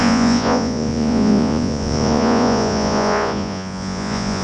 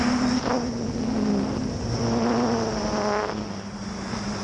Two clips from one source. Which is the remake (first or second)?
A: first